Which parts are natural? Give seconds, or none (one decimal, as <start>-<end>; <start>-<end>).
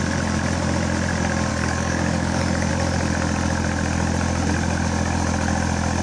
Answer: 0.0-1.5; 2.7-6.0